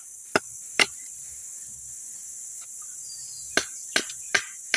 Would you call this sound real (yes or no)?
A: no